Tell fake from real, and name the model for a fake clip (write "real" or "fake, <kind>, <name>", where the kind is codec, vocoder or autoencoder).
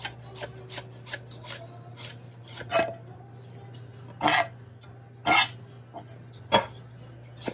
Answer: real